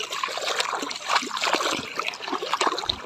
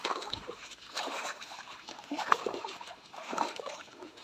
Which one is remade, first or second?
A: second